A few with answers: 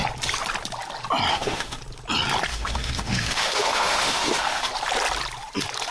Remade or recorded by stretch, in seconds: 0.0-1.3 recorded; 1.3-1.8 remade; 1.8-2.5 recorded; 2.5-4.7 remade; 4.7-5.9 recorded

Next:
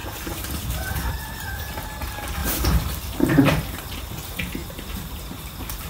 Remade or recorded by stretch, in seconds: 0.0-2.4 recorded; 2.4-3.3 remade; 3.3-4.6 recorded; 4.6-5.9 remade

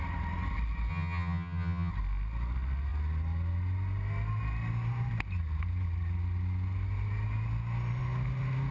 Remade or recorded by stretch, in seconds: 0.0-0.9 recorded; 0.9-1.9 remade; 1.9-8.7 recorded

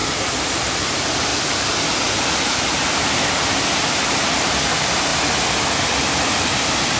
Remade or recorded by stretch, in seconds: 0.0-0.6 recorded; 0.6-1.3 remade; 1.3-3.8 recorded; 3.8-5.1 remade; 5.1-6.0 recorded; 6.0-7.0 remade